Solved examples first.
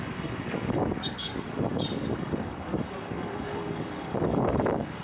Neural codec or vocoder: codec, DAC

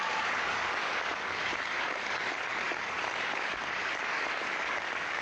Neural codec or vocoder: codec, DAC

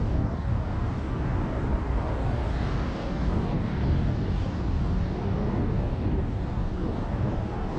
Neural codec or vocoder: codec, DAC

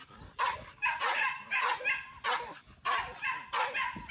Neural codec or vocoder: none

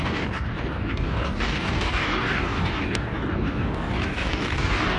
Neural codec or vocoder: codec, DAC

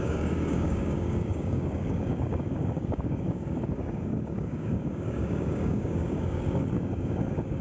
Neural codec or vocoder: codec, DAC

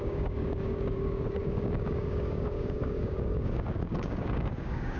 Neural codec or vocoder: codec, DAC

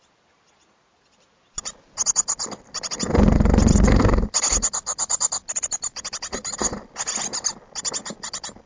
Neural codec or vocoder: none